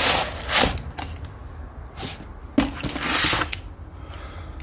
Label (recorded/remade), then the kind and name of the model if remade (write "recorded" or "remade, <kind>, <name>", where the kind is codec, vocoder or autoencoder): recorded